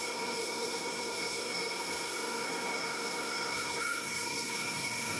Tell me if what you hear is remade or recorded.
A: remade